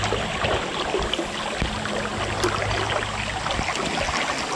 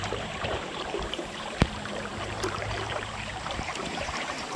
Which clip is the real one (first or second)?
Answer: first